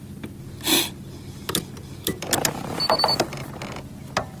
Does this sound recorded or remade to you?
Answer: recorded